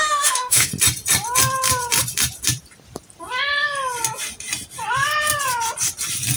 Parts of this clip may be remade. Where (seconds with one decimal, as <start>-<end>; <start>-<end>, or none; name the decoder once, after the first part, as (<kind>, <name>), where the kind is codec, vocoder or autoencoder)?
0.0-0.7 (autoencoder, DAC-VAE)